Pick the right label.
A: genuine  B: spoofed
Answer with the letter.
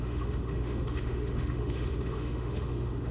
B